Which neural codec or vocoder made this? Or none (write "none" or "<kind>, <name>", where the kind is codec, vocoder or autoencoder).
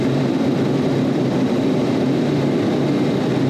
vocoder, BigVGAN v2